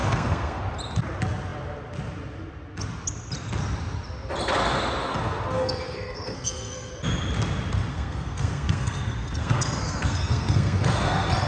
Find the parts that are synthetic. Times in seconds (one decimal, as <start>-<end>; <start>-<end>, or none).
0.0-0.6; 5.1-6.9; 7.9-11.5